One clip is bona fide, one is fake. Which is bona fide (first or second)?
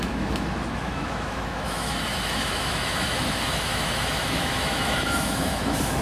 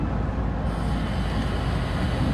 second